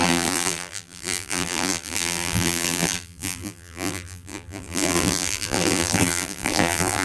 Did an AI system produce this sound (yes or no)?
yes